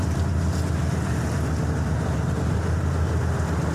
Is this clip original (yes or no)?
yes